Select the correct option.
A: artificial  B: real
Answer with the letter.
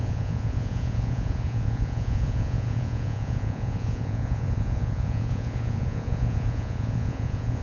A